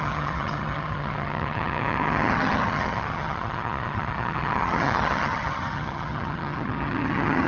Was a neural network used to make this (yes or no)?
yes